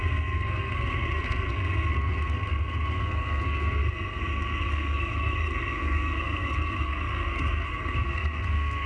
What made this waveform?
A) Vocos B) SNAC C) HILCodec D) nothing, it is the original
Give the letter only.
B